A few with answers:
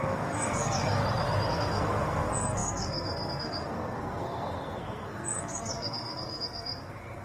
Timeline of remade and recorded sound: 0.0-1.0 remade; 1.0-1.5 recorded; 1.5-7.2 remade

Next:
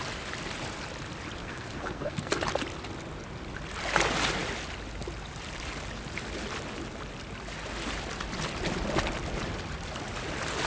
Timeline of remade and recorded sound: 0.0-1.4 recorded; 1.4-2.3 remade; 2.3-10.7 recorded

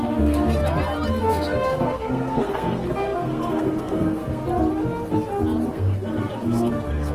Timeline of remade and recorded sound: 0.0-0.6 remade; 0.6-1.2 recorded; 1.2-4.4 remade; 4.4-5.7 recorded; 5.7-7.1 remade

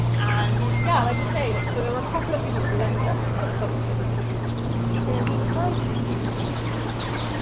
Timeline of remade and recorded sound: 0.0-7.4 recorded